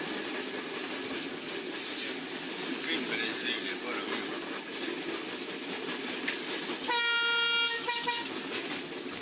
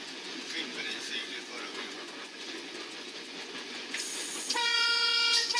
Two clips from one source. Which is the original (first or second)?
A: first